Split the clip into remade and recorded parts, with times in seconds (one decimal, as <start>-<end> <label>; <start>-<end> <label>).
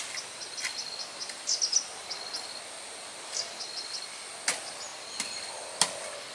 0.0-6.3 recorded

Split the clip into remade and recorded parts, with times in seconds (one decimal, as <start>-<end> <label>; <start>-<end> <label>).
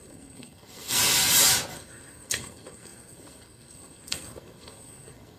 0.0-1.0 remade; 1.0-1.7 recorded; 1.7-5.4 remade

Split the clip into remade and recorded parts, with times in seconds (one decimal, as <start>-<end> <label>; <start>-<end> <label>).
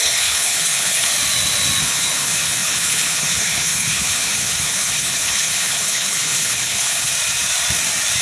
0.0-1.1 remade; 1.1-1.8 recorded; 1.8-7.1 remade; 7.1-8.2 recorded